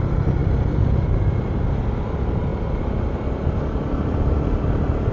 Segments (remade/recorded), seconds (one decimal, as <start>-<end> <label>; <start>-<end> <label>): 0.0-5.1 recorded